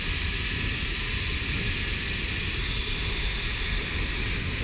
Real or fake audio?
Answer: real